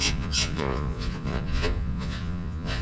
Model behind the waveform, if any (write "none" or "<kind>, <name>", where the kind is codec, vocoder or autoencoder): vocoder, Vocos